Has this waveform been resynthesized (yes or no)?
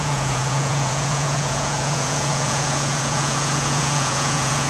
yes